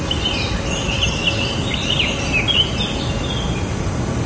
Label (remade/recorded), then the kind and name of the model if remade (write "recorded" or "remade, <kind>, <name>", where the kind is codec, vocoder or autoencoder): recorded